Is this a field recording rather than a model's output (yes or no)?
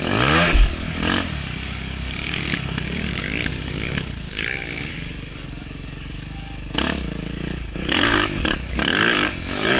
no